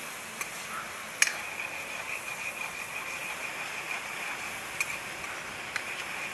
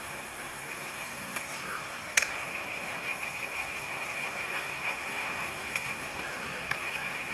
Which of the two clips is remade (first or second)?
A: second